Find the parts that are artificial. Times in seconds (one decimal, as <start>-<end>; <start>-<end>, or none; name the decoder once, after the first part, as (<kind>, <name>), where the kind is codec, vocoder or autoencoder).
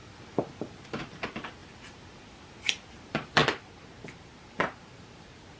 1.0-3.4 (vocoder, BigVGAN v2)